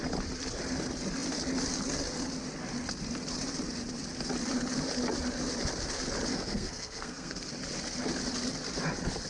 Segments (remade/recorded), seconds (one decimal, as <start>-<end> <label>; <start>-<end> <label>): 0.0-6.3 recorded; 6.3-7.5 remade; 7.5-9.3 recorded